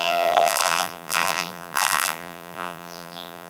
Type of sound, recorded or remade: remade